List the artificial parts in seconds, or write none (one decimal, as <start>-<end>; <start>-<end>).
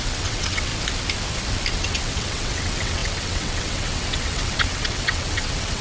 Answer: 0.0-0.7; 1.7-5.8